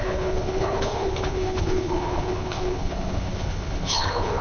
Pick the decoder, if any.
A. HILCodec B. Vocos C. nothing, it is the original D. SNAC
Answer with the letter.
A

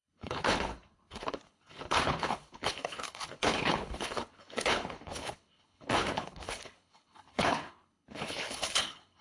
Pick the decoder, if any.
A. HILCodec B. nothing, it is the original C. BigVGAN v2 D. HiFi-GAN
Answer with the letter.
A